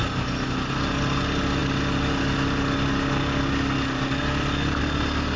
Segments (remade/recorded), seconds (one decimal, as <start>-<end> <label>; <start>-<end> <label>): 0.0-5.4 recorded